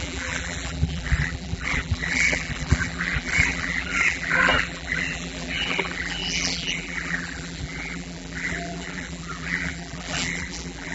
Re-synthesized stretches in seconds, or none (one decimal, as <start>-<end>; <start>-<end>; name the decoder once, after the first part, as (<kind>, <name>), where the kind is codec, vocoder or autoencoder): 0.0-10.9 (vocoder, BigVGAN v2)